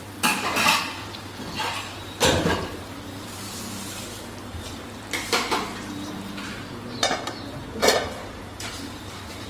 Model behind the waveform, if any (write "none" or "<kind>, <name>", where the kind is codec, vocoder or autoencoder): vocoder, BigVGAN v2